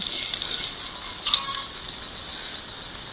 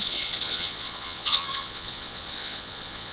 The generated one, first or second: second